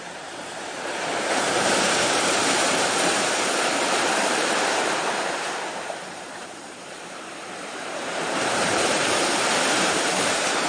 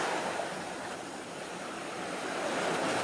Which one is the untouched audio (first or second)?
second